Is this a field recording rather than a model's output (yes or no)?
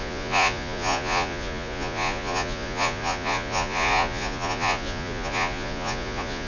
no